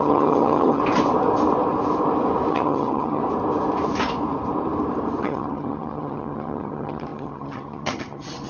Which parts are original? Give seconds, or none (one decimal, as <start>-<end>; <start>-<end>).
0.8-2.5; 3.2-5.2